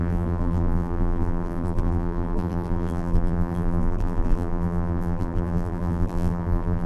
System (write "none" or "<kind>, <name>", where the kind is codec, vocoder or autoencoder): vocoder, BigVGAN v2